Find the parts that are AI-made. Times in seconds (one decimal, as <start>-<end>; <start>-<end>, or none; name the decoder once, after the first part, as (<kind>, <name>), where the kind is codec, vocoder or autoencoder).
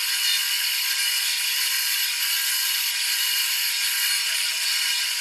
0.4-2.2 (vocoder, BigVGAN v2)